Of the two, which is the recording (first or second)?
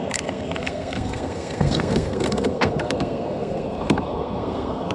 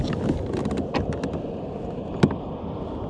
second